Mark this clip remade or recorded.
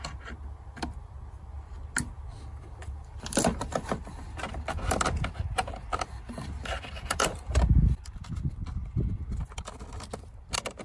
recorded